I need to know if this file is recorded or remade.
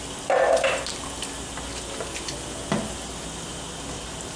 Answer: recorded